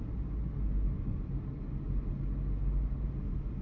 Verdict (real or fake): real